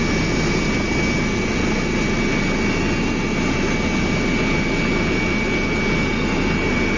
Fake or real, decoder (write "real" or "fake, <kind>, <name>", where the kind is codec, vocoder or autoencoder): real